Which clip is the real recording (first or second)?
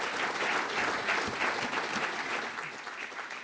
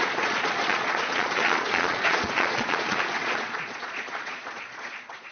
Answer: first